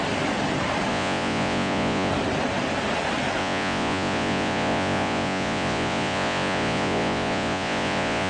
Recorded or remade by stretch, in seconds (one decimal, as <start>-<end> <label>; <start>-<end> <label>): 0.0-0.9 recorded; 0.9-2.1 remade; 2.1-3.4 recorded; 3.4-8.3 remade